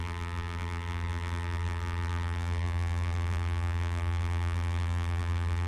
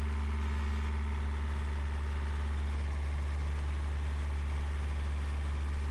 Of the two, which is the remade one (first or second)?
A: first